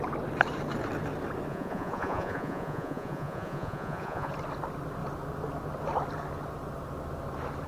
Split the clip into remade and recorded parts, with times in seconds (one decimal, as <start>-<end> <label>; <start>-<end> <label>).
0.0-1.5 recorded; 1.5-4.3 remade; 4.3-7.7 recorded

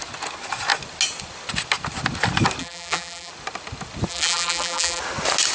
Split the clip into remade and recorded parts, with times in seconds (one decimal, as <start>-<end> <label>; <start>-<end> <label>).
0.0-2.6 recorded; 2.6-3.3 remade; 3.3-4.1 recorded; 4.1-5.0 remade; 5.0-5.5 recorded

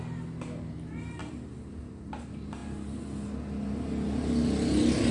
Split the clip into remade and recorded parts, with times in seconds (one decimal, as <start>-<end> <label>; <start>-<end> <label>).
0.0-5.1 recorded

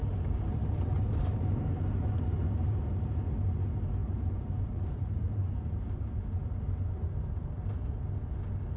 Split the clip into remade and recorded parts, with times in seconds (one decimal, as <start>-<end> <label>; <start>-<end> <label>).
0.0-3.2 remade; 3.2-4.0 recorded; 4.0-6.1 remade; 6.1-8.8 recorded